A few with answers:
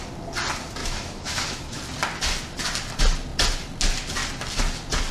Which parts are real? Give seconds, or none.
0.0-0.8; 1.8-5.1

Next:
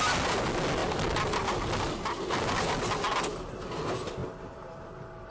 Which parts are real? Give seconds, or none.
0.0-5.3

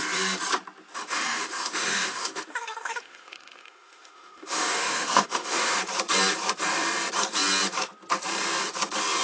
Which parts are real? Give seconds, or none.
0.0-0.9; 5.8-9.2